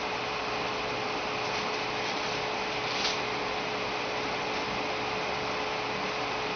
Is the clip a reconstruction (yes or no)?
no